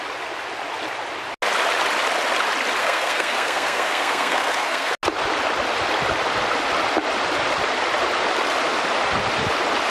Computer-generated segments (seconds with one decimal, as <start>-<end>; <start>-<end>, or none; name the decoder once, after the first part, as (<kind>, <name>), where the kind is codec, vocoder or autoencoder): 2.8-4.9 (codec, SNAC)